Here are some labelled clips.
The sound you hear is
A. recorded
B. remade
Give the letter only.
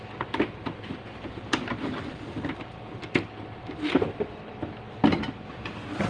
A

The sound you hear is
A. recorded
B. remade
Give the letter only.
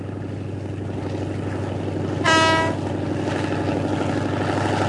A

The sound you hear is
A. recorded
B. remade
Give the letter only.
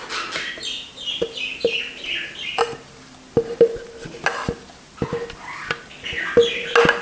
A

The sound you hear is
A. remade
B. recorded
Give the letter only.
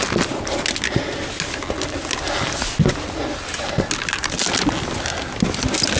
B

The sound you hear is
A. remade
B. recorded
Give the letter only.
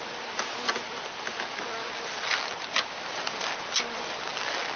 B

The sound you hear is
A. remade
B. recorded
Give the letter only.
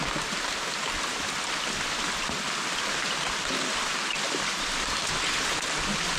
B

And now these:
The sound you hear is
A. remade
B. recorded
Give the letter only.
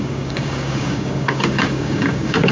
A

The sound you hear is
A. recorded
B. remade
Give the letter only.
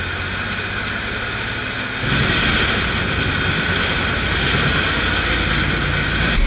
A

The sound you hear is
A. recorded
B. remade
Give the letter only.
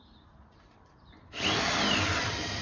B